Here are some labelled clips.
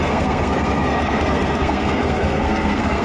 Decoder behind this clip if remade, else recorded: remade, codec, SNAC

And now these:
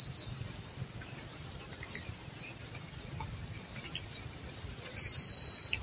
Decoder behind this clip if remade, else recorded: recorded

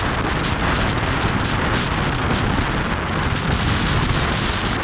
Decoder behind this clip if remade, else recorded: recorded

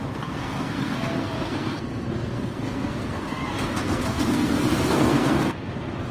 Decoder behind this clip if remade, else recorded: remade, codec, SNAC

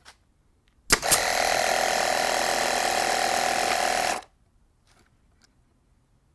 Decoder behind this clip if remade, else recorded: recorded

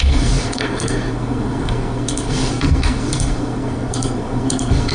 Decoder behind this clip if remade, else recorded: remade, codec, SNAC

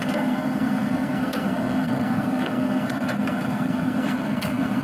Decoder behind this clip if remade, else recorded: remade, codec, SNAC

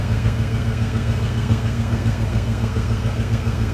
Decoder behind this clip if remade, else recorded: remade, codec, SNAC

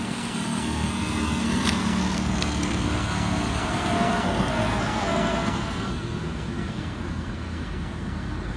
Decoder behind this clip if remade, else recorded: remade, codec, SNAC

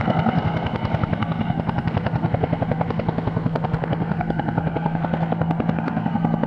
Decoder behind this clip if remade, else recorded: remade, codec, SNAC